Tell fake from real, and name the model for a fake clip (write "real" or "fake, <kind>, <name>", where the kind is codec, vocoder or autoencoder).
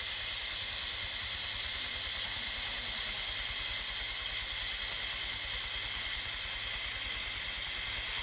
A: real